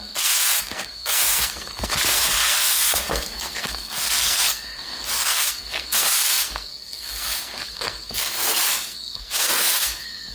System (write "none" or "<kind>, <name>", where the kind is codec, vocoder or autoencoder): codec, SNAC